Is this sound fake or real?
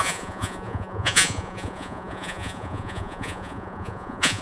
fake